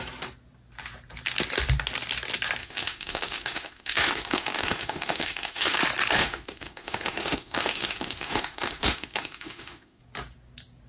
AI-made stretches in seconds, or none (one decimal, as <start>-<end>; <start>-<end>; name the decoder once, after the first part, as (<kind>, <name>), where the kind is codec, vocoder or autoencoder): 2.6-5.8 (autoencoder, DAC-VAE); 6.2-10.0